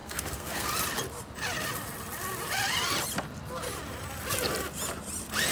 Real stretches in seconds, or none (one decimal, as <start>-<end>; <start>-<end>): 0.7-5.5